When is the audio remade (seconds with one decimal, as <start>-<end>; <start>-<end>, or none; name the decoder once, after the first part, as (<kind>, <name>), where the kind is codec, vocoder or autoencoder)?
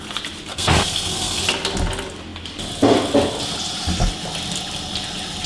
0.5-1.4 (codec, SNAC)